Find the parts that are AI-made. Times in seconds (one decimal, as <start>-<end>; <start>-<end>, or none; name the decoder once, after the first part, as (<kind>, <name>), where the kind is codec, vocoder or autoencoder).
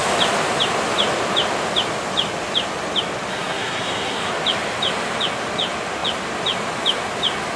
3.3-4.3 (codec, SNAC)